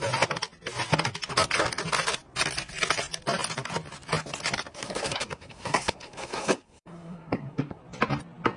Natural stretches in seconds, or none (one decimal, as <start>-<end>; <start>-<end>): 0.0-4.7; 7.8-8.6